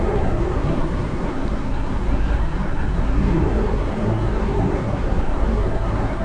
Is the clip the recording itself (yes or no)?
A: no